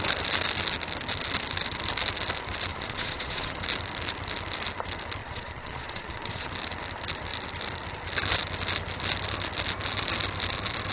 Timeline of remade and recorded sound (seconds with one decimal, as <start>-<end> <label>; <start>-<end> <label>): 0.0-2.7 recorded; 2.7-3.5 remade; 3.5-5.2 recorded; 5.2-6.5 remade; 6.5-10.9 recorded